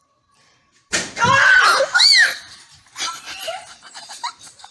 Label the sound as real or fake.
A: fake